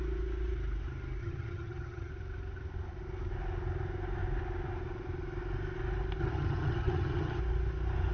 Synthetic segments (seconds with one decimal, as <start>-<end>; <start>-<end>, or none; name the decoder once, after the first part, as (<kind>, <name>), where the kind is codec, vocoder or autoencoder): 1.2-2.1 (vocoder, HiFi-GAN); 6.2-7.4

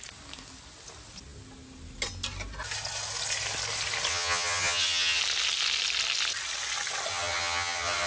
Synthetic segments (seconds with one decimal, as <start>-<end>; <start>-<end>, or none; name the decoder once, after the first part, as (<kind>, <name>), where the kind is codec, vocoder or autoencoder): 4.1-5.2 (vocoder, HiFi-GAN); 7.1-8.1

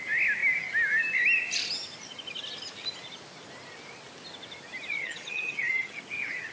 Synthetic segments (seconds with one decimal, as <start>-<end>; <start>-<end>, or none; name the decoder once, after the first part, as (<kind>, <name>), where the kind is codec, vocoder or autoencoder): 5.0-6.0 (vocoder, HiFi-GAN)

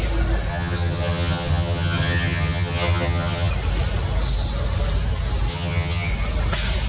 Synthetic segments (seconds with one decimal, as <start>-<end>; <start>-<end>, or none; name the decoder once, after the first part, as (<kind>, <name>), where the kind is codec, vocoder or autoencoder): 0.5-3.5 (vocoder, HiFi-GAN); 5.5-6.1

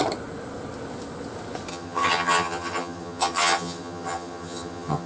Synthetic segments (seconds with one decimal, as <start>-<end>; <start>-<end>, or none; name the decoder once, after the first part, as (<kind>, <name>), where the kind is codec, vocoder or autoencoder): 1.7-5.1 (vocoder, HiFi-GAN)